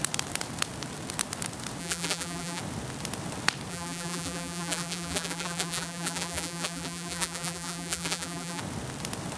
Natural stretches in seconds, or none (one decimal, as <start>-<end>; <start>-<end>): 0.0-1.8; 2.6-3.7; 8.6-9.4